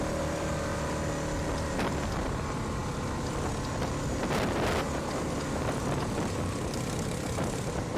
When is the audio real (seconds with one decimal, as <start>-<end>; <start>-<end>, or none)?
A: 0.7-1.8